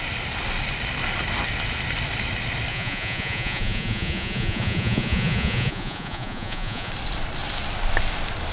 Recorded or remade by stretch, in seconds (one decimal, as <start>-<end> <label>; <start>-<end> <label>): 0.0-2.7 recorded; 2.7-6.9 remade; 6.9-8.5 recorded